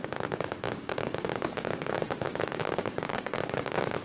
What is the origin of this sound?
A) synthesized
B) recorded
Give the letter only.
A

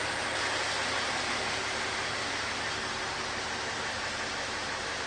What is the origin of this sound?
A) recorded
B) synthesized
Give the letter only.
A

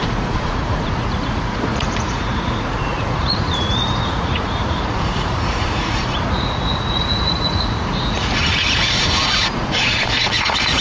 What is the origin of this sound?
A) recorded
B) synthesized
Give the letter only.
B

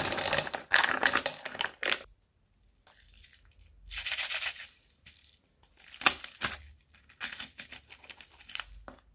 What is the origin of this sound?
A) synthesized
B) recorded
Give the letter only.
B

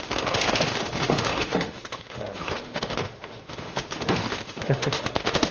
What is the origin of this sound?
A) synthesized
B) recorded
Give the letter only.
A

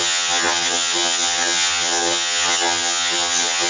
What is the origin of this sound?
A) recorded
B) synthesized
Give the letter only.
B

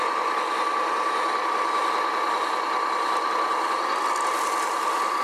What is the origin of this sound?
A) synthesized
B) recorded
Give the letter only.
B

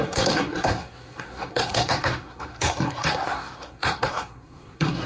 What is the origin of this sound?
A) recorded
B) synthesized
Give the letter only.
B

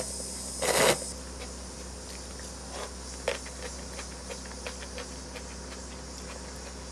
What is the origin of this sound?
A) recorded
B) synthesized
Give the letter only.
A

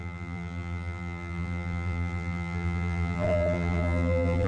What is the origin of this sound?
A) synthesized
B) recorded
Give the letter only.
A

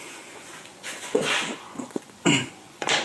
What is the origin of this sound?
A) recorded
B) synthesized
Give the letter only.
B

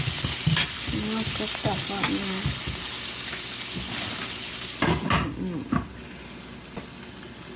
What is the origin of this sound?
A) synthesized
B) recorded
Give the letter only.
B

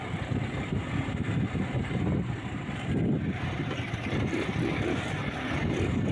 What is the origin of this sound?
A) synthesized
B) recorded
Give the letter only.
A